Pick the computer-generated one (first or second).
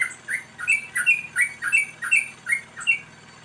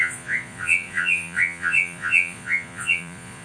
second